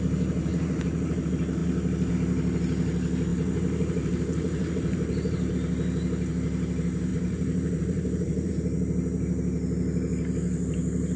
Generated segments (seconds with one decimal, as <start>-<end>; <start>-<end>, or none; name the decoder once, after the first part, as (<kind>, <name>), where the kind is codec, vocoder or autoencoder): 0.5-1.2 (vocoder, BigVGAN v2); 3.3-5.5; 7.1-8.5